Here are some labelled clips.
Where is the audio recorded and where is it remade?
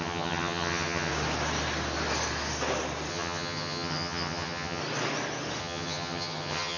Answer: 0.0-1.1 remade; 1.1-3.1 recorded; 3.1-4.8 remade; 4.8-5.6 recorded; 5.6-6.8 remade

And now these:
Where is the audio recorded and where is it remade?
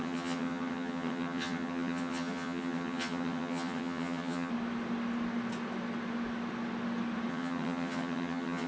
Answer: 0.0-4.5 remade; 4.5-7.3 recorded; 7.3-8.7 remade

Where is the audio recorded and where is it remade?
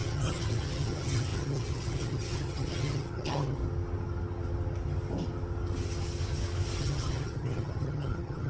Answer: 0.0-3.6 remade; 3.6-6.8 recorded; 6.8-8.5 remade